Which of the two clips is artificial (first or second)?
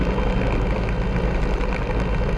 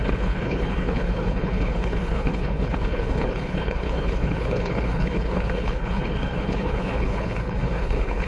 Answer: second